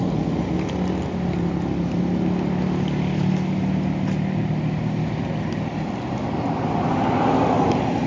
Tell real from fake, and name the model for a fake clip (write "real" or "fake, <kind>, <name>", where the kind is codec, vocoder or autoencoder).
real